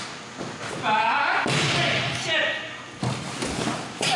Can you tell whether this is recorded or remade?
recorded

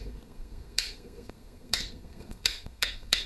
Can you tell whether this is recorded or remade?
remade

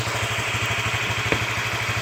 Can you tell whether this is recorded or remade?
recorded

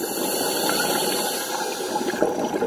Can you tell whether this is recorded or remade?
recorded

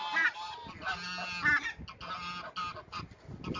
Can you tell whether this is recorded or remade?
recorded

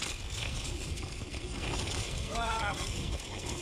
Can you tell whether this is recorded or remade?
remade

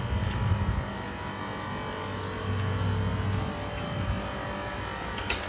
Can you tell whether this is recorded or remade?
recorded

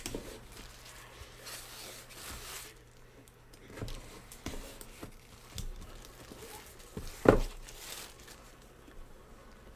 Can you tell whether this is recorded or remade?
recorded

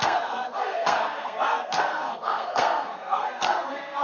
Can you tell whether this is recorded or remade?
remade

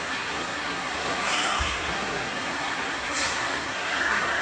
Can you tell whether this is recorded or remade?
remade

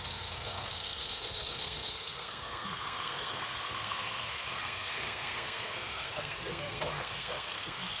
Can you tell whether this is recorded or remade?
remade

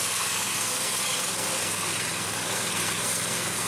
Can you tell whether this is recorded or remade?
remade